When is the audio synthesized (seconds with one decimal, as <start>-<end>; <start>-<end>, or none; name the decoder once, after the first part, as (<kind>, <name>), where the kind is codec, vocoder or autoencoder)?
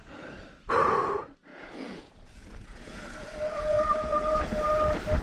1.5-4.4 (vocoder, Vocos)